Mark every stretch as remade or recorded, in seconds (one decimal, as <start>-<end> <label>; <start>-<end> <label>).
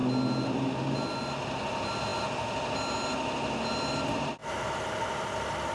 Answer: 0.0-5.7 recorded